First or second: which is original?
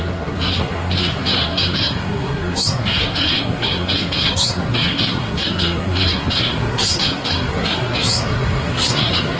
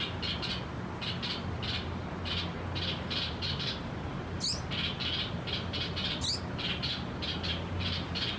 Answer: second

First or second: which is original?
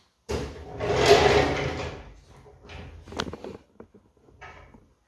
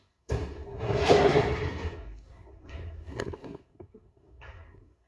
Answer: first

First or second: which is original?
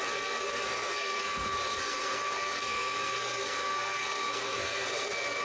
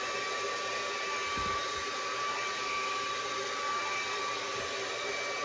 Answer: second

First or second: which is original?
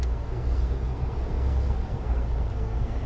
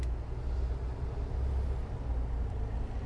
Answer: second